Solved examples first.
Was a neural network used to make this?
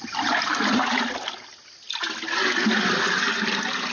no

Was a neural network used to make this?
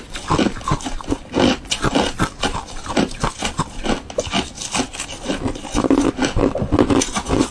no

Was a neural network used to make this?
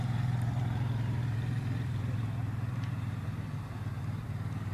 yes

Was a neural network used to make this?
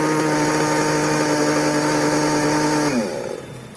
no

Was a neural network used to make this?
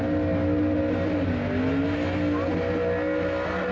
no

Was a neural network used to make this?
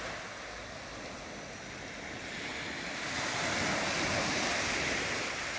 no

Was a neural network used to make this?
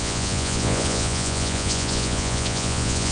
yes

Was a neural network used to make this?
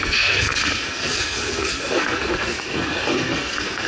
yes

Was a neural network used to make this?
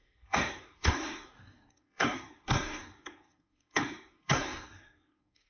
yes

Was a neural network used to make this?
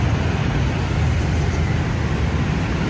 no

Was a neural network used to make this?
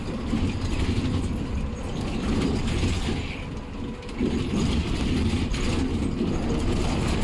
no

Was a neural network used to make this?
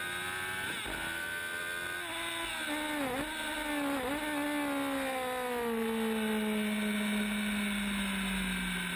no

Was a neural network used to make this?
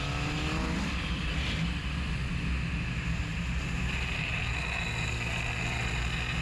no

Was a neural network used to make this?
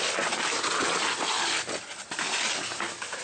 no